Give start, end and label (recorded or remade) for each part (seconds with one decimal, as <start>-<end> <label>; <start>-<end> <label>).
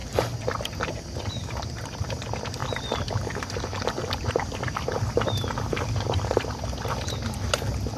0.0-2.0 remade; 2.0-2.6 recorded; 2.6-6.9 remade; 6.9-8.0 recorded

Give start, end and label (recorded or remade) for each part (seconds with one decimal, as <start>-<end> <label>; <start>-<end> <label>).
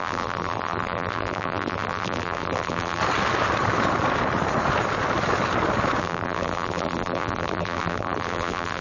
0.0-3.0 remade; 3.0-6.0 recorded; 6.0-8.8 remade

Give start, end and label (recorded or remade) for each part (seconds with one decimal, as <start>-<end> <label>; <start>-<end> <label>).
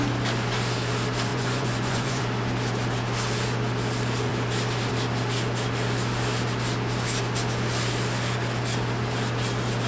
0.0-1.3 recorded; 1.3-2.2 remade; 2.2-9.9 recorded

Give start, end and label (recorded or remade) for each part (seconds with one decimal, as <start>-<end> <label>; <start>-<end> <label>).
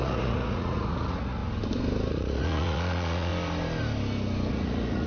0.0-1.4 remade; 1.4-2.1 recorded; 2.1-3.3 remade; 3.3-4.5 recorded; 4.5-5.1 remade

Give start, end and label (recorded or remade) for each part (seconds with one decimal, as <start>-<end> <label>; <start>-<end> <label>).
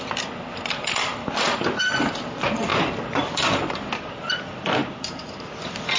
0.0-2.7 remade; 2.7-3.2 recorded; 3.2-6.0 remade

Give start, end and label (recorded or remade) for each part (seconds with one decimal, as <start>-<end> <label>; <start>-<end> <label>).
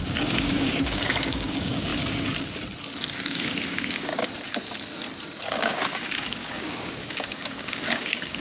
0.0-1.9 remade; 1.9-3.2 recorded; 3.2-4.1 remade; 4.1-5.4 recorded; 5.4-8.4 remade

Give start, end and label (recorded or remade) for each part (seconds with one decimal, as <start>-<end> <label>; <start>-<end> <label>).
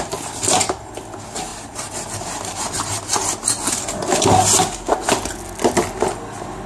0.0-1.5 recorded; 1.5-2.7 remade; 2.7-6.7 recorded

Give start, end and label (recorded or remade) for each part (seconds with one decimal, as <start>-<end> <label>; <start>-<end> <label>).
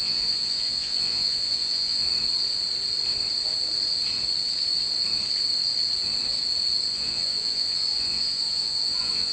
0.0-2.1 remade; 2.1-6.9 recorded; 6.9-9.3 remade